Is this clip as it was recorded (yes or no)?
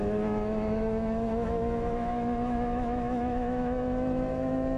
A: no